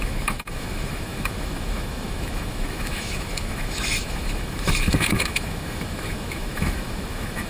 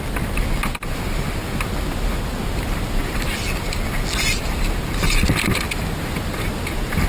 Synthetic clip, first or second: first